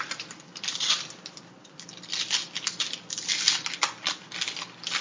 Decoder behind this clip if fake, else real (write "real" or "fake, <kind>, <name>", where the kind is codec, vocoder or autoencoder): real